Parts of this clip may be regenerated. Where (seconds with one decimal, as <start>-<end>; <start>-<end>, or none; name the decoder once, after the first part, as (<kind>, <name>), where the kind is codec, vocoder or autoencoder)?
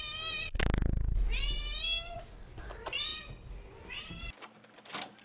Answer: none